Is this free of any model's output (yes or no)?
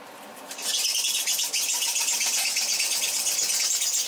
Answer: yes